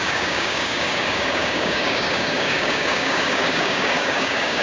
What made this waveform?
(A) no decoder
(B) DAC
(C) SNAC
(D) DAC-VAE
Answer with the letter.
B